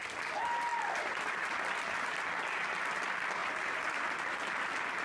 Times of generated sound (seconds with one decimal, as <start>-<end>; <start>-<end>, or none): none